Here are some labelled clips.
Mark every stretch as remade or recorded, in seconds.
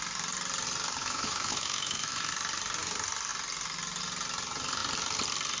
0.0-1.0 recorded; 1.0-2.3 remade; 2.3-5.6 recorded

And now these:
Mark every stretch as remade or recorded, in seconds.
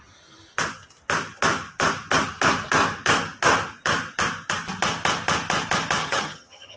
0.0-6.0 recorded; 6.0-6.8 remade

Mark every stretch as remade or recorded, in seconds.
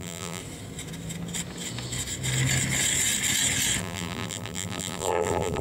0.0-0.4 remade; 0.4-3.8 recorded; 3.8-5.6 remade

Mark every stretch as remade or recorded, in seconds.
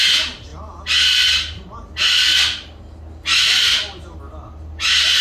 0.0-5.2 recorded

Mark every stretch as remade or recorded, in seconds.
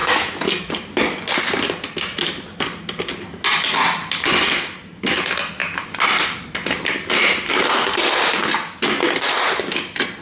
0.0-0.7 remade; 0.7-10.2 recorded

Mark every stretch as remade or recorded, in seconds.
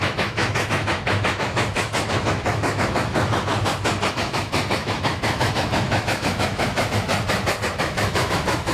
0.0-3.5 remade; 3.5-4.1 recorded; 4.1-7.1 remade; 7.1-7.8 recorded; 7.8-8.7 remade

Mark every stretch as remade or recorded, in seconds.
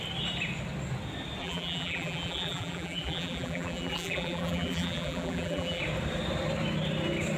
0.0-1.4 recorded; 1.4-5.8 remade; 5.8-7.4 recorded